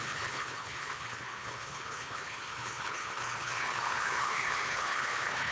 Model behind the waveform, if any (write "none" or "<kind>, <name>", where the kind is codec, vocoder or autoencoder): codec, HILCodec